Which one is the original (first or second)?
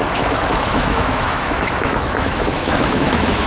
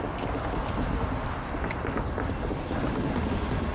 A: second